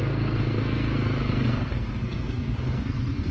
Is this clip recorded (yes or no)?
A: no